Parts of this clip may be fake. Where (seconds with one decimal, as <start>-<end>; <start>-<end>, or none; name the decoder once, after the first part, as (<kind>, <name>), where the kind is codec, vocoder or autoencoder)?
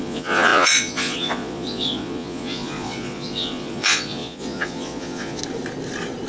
0.0-5.4 (vocoder, Vocos)